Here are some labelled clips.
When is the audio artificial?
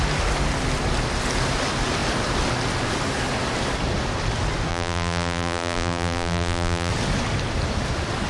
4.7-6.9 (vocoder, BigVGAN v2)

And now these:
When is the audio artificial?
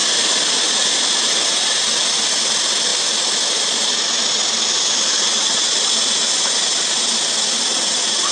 none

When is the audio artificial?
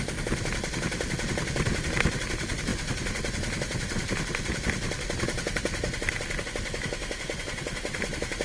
none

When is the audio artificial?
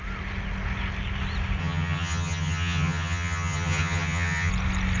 1.6-4.5 (vocoder, HiFi-GAN)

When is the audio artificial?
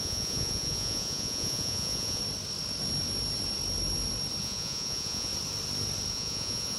0.0-2.2 (vocoder, Vocos); 4.4-5.3; 6.1-6.8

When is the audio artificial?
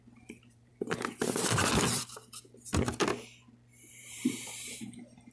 0.0-0.7 (vocoder, BigVGAN v2); 3.9-5.3